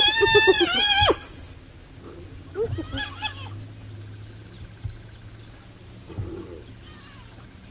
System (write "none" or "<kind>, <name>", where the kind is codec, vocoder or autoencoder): none